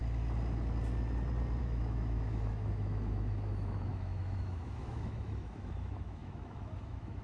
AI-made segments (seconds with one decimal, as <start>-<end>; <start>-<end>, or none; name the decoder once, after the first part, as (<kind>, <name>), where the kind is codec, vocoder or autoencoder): 1.6-7.2 (autoencoder, DAC-VAE)